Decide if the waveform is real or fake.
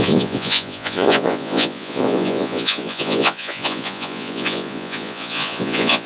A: fake